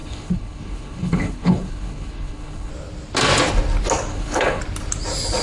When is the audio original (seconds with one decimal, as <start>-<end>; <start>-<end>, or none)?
2.7-4.1; 4.6-5.4